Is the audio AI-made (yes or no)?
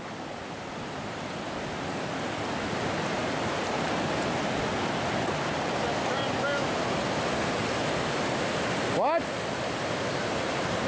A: no